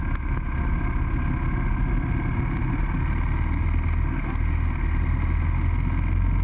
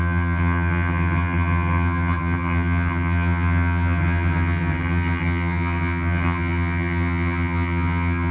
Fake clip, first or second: second